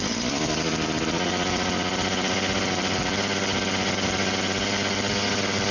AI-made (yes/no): no